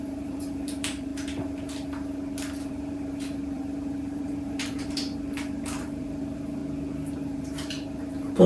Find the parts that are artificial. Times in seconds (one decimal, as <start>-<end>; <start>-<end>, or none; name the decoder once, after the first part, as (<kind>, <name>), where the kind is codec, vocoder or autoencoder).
0.0-1.1 (vocoder, BigVGAN v2); 2.7-6.6; 7.1-8.5